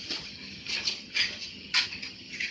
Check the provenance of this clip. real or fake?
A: fake